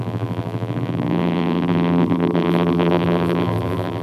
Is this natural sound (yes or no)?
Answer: no